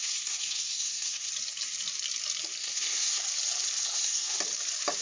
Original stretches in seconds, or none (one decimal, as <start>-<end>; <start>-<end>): 1.3-2.6; 3.2-3.9; 4.4-5.0